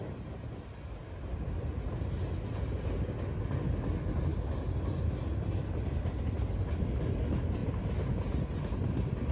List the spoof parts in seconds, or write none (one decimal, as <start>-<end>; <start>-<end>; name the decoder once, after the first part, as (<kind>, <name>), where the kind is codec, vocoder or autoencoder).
none